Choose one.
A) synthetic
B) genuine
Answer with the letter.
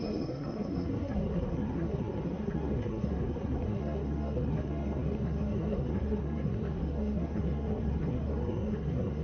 A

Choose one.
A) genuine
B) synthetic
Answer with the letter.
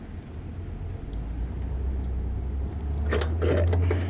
A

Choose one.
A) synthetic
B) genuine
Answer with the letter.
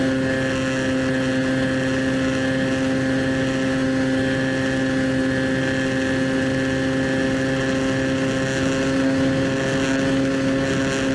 B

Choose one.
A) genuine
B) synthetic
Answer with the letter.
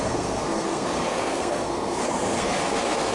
B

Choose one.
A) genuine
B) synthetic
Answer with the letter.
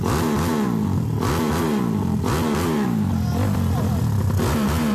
A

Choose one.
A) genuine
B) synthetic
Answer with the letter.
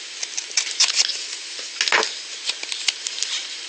A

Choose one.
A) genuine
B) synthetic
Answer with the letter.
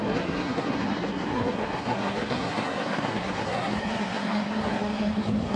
B